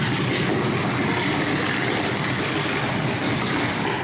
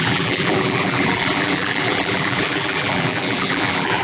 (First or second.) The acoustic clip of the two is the first